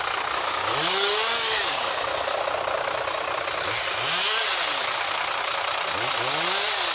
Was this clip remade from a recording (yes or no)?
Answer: no